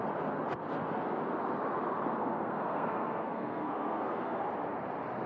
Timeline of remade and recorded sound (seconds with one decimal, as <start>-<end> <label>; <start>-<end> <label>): 0.0-2.2 recorded; 2.2-4.4 remade; 4.4-5.3 recorded